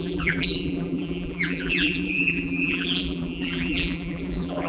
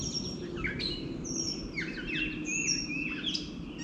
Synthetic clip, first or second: first